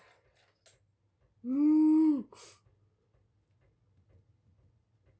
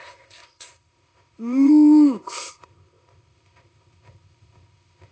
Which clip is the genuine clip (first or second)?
first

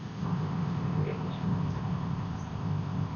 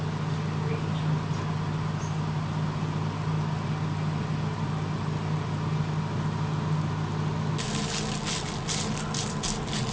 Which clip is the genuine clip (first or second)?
second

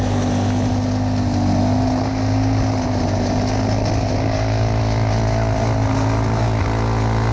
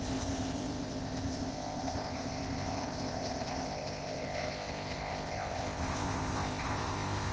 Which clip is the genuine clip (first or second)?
first